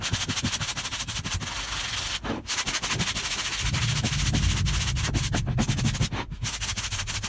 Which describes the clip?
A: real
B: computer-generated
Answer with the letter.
A